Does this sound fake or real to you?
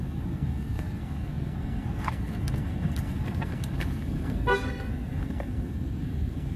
fake